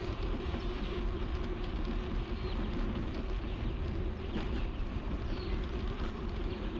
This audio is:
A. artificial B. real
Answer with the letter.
A